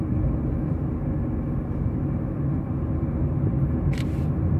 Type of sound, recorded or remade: recorded